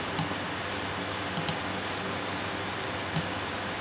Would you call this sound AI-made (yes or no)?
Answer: no